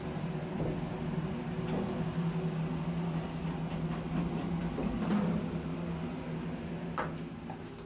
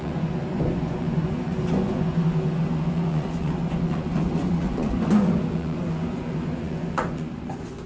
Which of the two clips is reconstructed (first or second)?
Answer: second